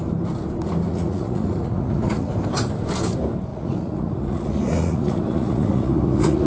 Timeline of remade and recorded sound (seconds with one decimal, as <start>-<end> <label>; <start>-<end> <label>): 0.0-0.9 recorded; 0.9-2.3 remade; 2.3-3.5 recorded; 3.5-6.5 remade